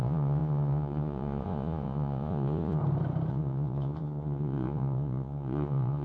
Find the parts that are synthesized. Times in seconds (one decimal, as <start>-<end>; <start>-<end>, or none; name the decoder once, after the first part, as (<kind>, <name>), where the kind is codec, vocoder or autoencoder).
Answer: 0.0-2.8 (vocoder, Vocos); 3.3-6.0